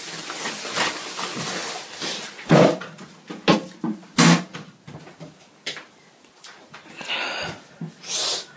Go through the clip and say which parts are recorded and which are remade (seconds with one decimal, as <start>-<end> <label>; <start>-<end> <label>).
0.0-8.6 recorded